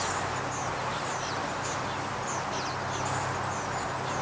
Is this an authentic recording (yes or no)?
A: yes